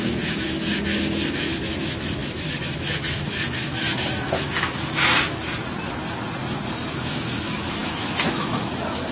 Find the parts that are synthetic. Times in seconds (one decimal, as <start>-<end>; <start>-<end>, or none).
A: 0.0-4.8; 7.0-9.1